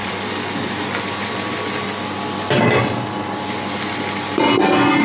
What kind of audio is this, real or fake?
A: real